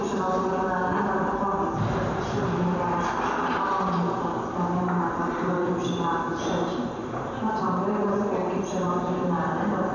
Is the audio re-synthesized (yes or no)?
yes